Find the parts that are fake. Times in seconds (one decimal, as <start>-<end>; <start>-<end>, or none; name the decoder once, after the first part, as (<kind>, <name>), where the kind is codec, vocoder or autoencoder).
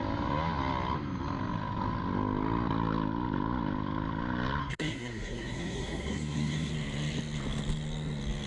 4.6-6.7 (codec, SNAC)